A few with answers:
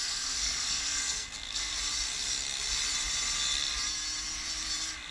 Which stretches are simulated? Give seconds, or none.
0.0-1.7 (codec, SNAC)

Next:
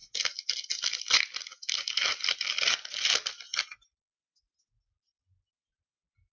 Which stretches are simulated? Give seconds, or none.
none